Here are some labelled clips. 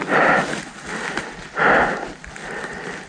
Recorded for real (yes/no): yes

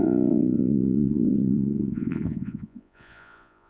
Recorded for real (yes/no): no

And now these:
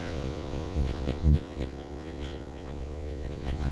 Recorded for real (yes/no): no